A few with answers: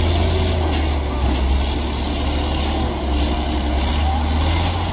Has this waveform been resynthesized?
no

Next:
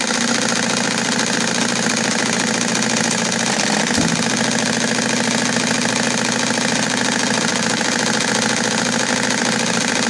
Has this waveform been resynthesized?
no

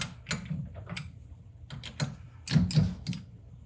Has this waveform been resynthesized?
no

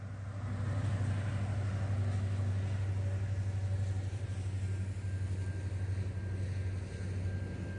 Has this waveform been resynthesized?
no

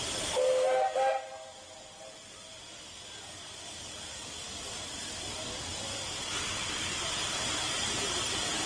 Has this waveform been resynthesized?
no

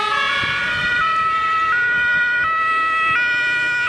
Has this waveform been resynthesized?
no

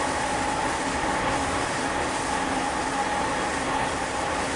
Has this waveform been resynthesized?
no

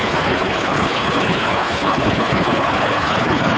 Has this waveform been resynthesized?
yes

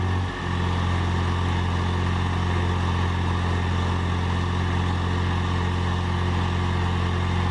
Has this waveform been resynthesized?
no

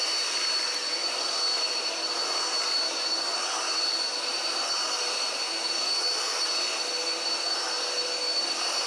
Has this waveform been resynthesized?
no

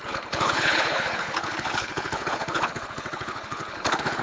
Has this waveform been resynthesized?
yes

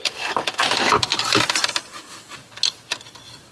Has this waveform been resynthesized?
no